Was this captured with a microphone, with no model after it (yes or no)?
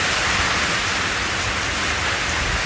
yes